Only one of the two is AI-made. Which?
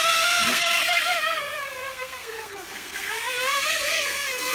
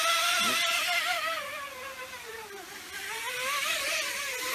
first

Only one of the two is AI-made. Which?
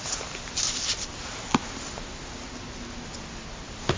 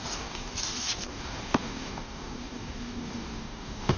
second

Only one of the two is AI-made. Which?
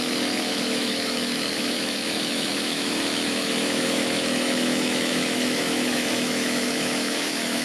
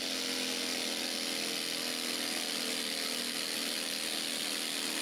first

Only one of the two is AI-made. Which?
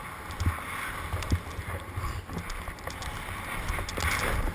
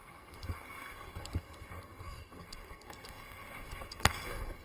second